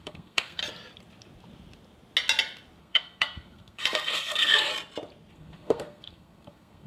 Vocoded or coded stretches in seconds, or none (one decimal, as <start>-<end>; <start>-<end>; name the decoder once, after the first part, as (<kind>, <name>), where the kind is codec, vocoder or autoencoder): 0.0-0.6 (codec, SNAC); 2.8-4.7; 5.3-6.9